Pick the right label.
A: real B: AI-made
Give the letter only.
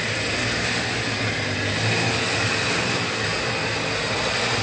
A